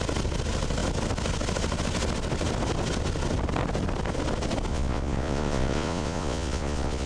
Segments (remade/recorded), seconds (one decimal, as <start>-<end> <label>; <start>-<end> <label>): 0.0-4.7 recorded; 4.7-7.1 remade